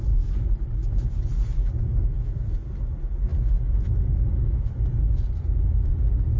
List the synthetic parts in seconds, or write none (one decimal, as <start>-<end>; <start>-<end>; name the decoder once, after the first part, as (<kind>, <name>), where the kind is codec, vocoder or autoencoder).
none